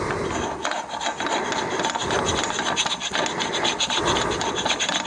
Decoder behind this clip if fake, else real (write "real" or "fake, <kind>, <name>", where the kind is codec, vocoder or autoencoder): real